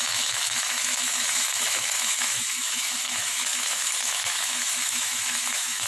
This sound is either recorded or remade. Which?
remade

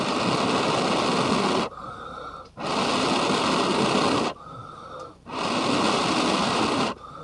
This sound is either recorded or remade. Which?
recorded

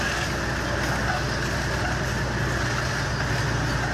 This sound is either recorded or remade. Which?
recorded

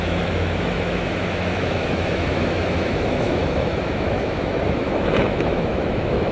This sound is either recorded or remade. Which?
remade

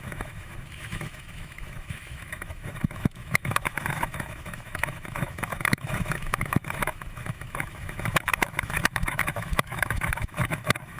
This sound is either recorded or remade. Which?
remade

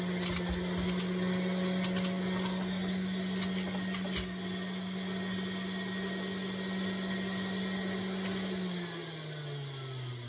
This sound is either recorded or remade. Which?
recorded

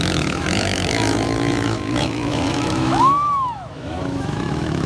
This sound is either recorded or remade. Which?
remade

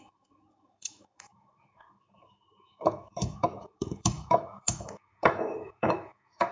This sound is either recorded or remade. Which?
remade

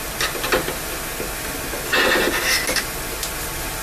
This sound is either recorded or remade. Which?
recorded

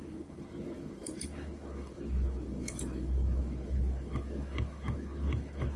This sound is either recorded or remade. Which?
remade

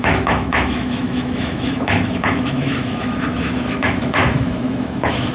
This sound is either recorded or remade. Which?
remade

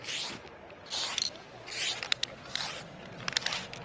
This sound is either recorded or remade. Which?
recorded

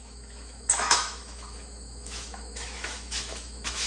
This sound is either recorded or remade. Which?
remade